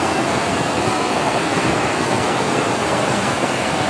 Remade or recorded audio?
remade